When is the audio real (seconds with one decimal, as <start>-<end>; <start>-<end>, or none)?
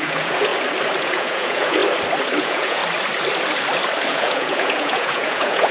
0.5-1.0; 1.8-2.4; 2.8-4.1